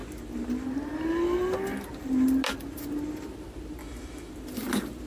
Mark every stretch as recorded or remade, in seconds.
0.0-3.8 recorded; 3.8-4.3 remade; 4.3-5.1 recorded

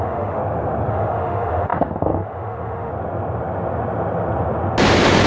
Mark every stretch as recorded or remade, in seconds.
0.0-0.4 remade; 0.4-0.9 recorded; 0.9-2.9 remade; 2.9-5.3 recorded

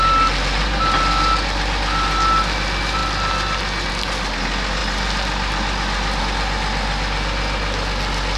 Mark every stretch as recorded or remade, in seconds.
0.0-8.4 recorded

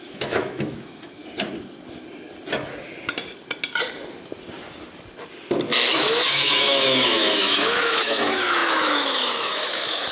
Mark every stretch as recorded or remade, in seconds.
0.0-1.2 remade; 1.2-5.9 recorded; 5.9-10.1 remade

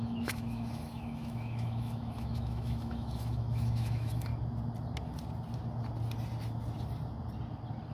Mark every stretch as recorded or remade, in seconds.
0.0-4.3 remade; 4.3-7.9 recorded